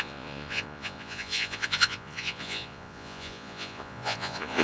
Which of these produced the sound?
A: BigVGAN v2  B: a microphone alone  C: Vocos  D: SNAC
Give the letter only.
C